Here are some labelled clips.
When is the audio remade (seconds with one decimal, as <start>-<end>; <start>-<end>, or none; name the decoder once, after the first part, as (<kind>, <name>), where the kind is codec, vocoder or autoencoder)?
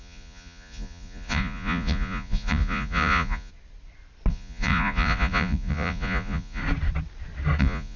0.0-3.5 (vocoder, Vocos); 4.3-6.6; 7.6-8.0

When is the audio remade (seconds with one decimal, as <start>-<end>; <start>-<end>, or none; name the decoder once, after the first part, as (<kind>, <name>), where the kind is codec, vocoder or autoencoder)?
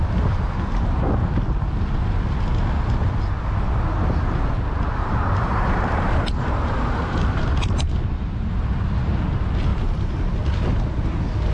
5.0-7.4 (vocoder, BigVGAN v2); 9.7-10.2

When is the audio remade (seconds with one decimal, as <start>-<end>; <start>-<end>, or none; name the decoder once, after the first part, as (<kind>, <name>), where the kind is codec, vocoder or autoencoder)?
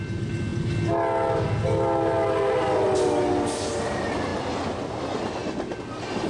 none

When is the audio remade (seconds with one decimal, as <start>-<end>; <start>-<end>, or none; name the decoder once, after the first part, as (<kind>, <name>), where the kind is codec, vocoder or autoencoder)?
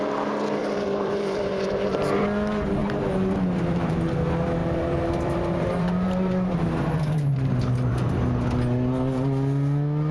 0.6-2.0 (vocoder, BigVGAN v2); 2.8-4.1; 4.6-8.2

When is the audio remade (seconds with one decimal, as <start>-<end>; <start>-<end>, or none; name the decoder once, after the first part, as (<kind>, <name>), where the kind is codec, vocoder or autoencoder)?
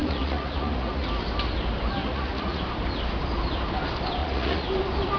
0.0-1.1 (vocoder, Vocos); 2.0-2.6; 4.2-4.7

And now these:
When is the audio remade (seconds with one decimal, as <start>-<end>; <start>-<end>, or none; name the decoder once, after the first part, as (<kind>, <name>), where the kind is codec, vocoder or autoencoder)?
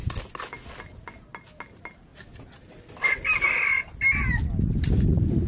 none